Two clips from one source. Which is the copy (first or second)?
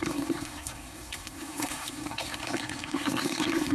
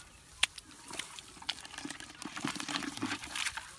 first